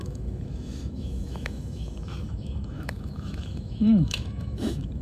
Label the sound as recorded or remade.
remade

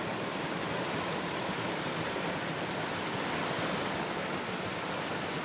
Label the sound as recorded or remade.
recorded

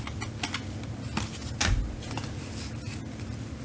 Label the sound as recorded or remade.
recorded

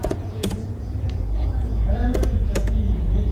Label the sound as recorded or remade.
remade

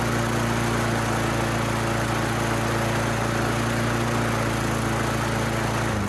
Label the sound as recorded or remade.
recorded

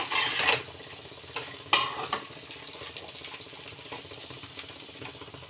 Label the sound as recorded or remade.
recorded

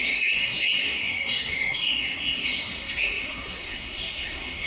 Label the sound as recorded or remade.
remade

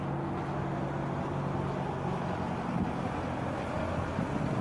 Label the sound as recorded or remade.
recorded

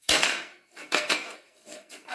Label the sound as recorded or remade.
remade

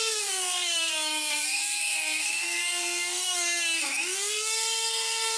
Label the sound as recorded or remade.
remade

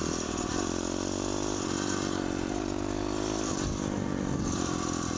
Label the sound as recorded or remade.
recorded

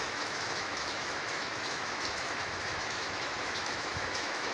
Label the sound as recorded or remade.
remade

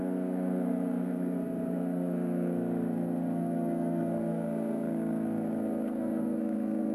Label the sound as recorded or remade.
remade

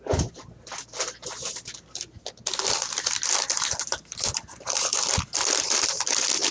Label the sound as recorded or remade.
recorded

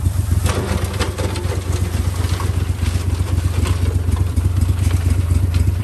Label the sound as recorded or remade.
recorded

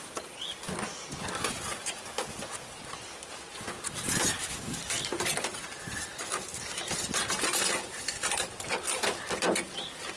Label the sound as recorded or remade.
recorded